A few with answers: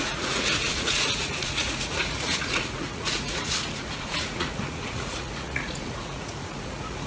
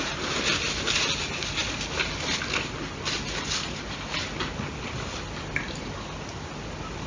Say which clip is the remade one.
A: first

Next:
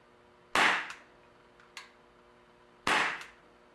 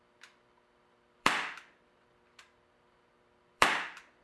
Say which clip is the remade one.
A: second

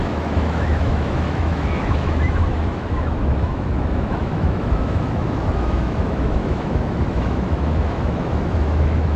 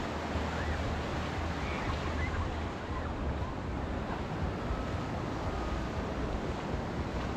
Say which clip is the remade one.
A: first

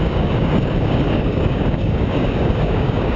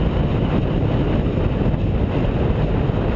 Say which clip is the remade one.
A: first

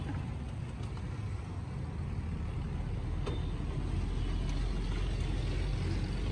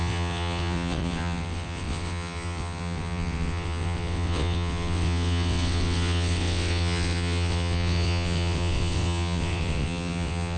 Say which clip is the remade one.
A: second